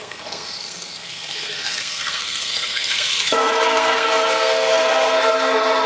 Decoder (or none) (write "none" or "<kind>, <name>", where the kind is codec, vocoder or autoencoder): codec, SNAC